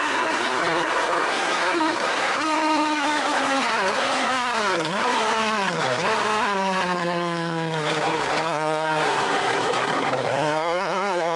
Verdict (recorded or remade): remade